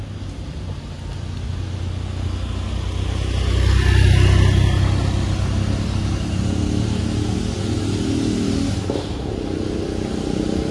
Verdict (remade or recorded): recorded